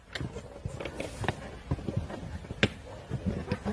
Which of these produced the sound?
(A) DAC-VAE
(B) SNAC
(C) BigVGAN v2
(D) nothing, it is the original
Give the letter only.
D